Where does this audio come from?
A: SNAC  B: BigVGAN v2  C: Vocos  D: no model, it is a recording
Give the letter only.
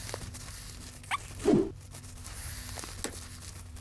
D